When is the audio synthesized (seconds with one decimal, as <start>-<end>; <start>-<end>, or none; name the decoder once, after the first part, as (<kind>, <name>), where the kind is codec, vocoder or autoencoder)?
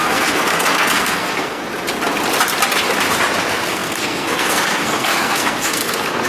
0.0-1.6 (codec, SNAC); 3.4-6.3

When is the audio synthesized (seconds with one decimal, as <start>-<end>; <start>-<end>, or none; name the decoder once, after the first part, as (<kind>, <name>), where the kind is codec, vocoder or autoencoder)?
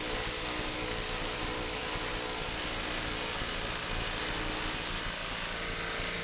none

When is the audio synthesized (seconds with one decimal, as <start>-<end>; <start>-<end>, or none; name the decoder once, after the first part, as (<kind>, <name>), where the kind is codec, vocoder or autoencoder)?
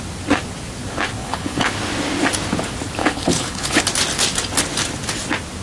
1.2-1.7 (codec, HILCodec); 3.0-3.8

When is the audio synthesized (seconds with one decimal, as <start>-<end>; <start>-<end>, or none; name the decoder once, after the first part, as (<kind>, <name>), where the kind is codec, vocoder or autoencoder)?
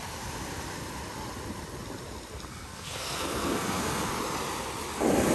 2.5-4.1 (codec, SNAC)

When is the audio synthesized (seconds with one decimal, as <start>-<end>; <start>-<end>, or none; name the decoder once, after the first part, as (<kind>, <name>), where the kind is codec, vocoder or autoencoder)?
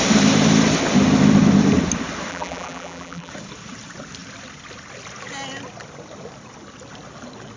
2.3-3.3 (vocoder, BigVGAN v2)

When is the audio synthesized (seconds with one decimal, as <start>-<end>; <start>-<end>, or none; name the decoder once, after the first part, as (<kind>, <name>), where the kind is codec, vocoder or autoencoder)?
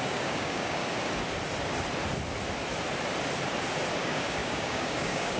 0.0-0.8 (codec, DAC); 4.0-5.4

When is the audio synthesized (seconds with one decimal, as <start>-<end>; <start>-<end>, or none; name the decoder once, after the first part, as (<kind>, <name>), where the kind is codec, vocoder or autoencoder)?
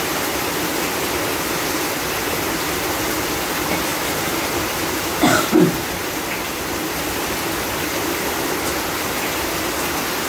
none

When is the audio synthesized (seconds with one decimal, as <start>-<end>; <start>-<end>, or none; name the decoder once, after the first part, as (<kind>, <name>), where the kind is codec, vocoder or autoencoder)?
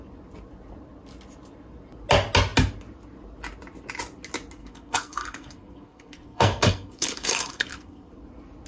4.6-8.1 (codec, SNAC)